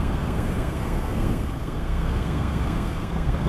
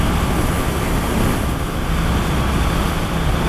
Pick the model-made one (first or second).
first